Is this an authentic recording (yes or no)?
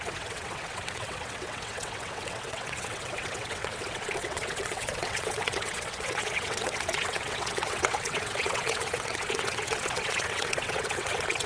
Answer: no